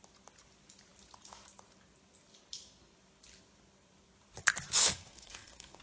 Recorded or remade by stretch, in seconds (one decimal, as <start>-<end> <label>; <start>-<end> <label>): 0.0-4.8 recorded; 4.8-5.8 remade